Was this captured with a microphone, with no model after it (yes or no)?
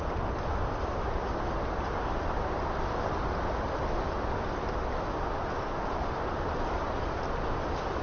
yes